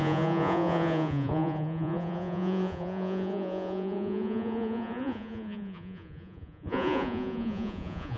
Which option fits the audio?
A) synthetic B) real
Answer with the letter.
A